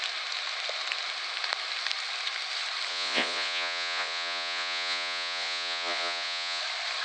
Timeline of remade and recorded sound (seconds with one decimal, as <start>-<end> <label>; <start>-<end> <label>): 0.0-2.9 recorded; 2.9-6.6 remade; 6.6-7.0 recorded